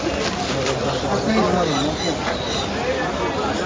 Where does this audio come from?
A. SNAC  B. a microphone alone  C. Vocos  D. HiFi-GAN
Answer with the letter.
B